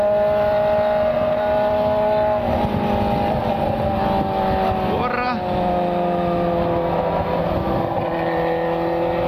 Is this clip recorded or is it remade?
recorded